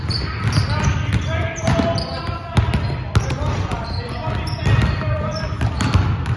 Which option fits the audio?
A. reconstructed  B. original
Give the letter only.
B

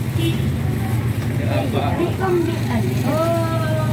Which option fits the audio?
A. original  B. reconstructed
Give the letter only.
A